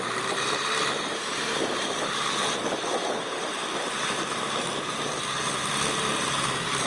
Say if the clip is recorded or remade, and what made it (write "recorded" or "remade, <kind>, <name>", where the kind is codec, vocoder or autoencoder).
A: remade, vocoder, BigVGAN v2